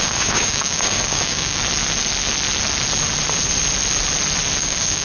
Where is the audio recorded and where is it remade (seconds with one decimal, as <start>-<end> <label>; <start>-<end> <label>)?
0.0-1.6 remade; 1.6-4.6 recorded; 4.6-5.0 remade